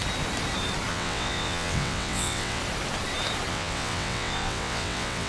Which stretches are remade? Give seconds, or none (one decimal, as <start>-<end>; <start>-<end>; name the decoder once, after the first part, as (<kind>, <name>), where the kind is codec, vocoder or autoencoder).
0.9-2.6 (vocoder, WaveNeXt); 3.5-5.3